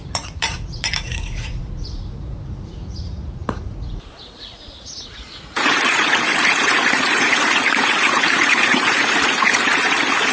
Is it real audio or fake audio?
fake